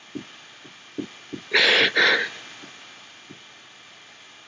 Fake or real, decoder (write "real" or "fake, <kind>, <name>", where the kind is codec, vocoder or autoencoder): real